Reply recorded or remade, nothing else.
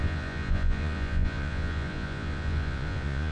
remade